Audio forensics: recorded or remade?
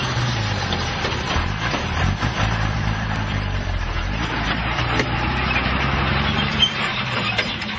remade